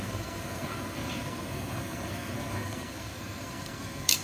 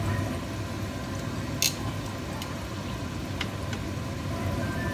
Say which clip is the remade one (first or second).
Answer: first